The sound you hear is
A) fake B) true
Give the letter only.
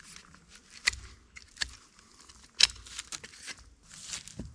B